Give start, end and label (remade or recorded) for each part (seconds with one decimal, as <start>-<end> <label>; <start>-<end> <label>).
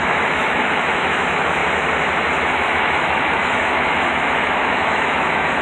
0.0-1.6 remade; 1.6-2.4 recorded; 2.4-5.6 remade